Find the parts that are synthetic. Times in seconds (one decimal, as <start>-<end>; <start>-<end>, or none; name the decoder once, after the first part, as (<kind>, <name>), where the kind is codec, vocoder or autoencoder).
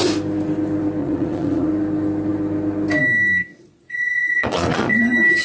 1.0-1.7 (vocoder, Vocos); 3.5-5.0